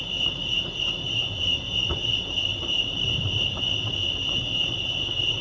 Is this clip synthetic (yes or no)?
yes